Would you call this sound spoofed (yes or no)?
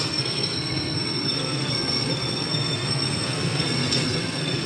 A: yes